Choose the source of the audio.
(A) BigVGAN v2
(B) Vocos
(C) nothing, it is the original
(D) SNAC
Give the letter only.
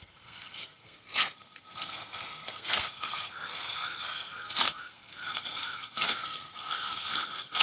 D